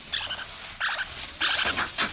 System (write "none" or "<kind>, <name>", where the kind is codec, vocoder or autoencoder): none